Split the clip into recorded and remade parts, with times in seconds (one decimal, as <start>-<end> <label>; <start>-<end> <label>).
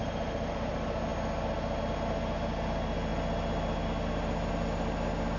0.0-5.4 recorded